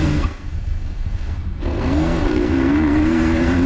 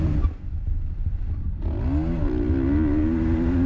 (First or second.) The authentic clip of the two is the second